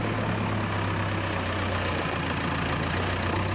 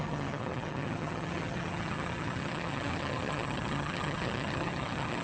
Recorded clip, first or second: first